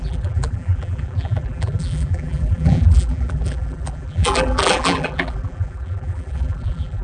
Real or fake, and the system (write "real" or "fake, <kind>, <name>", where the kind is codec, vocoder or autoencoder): fake, vocoder, BigVGAN v2